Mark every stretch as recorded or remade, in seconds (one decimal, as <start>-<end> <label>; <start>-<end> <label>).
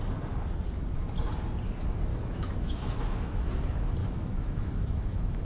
0.0-2.1 recorded; 2.1-3.5 remade; 3.5-4.0 recorded; 4.0-5.4 remade